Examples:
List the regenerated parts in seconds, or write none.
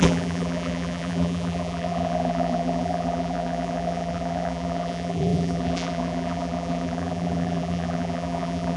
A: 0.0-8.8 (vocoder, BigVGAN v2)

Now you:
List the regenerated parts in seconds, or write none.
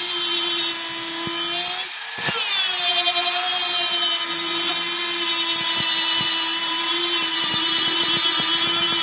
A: 2.9-3.4 (vocoder, BigVGAN v2); 6.6-7.4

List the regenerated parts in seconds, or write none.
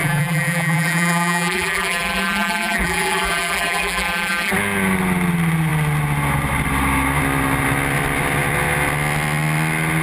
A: 0.0-4.5 (vocoder, BigVGAN v2)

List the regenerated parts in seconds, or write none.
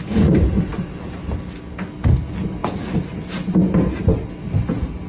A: none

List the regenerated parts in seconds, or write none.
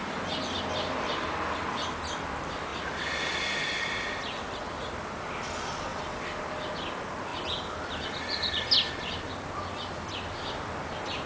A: none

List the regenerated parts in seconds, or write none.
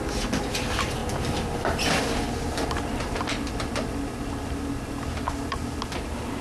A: none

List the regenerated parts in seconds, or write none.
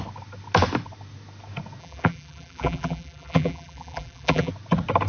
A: 1.8-4.5 (vocoder, BigVGAN v2)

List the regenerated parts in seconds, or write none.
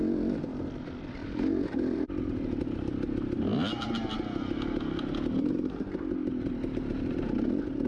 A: 1.2-2.6 (vocoder, BigVGAN v2)